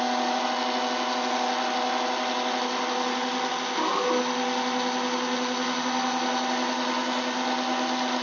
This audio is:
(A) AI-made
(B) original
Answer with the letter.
B